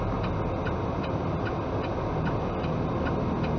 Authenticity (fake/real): real